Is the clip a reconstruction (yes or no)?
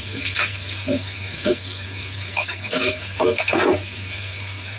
yes